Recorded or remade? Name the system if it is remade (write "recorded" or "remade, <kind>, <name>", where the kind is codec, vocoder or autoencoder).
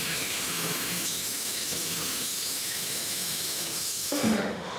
remade, autoencoder, DAC-VAE